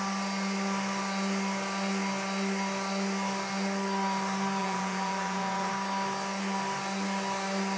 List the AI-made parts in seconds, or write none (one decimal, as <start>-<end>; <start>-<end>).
4.6-5.7